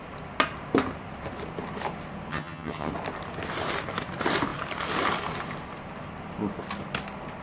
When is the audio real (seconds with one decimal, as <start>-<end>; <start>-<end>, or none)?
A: 0.0-2.3; 2.9-7.4